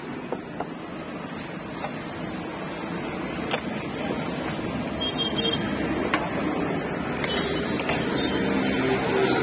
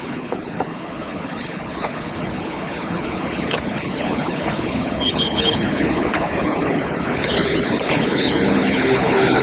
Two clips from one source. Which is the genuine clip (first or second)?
first